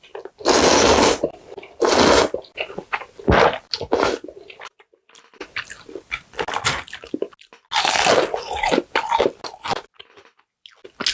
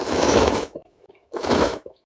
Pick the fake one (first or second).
second